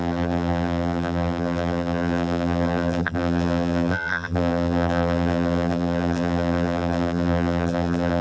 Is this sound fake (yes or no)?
yes